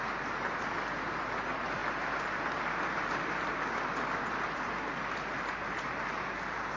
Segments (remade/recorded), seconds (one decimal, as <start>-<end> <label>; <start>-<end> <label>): 0.0-6.8 recorded

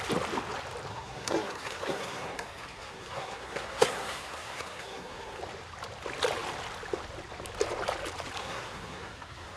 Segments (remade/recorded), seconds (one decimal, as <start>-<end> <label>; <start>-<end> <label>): 0.0-0.9 recorded; 0.9-5.4 remade; 5.4-8.4 recorded; 8.4-9.6 remade

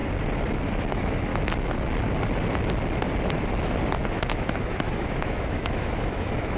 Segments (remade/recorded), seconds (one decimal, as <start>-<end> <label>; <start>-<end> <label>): 0.0-0.9 recorded; 0.9-1.3 remade; 1.3-4.1 recorded; 4.1-6.6 remade

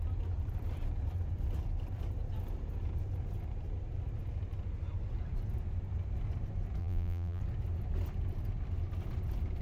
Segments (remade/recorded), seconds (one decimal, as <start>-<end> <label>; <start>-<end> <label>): 0.0-6.8 recorded; 6.8-7.4 remade; 7.4-9.6 recorded